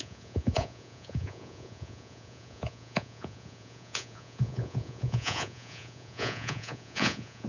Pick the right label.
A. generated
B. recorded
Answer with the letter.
A